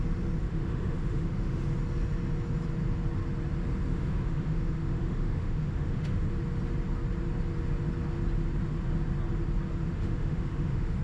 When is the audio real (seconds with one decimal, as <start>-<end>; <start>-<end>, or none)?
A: 0.0-0.4; 1.6-3.9; 6.3-9.9